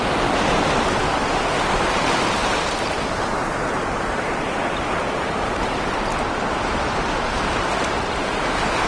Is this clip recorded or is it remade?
recorded